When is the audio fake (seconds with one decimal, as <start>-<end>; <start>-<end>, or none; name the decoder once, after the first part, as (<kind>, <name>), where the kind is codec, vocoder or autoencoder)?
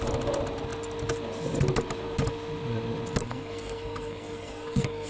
3.2-5.1 (codec, SNAC)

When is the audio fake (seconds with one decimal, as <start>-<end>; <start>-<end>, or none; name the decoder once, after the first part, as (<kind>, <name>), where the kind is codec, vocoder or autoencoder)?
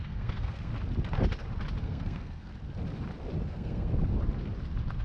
0.0-0.7 (codec, SNAC); 1.8-2.5; 3.5-3.9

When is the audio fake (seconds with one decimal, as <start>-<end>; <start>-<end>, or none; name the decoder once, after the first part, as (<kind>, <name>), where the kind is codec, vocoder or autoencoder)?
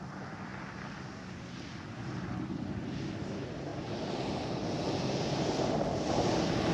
none